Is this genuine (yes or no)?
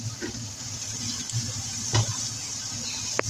yes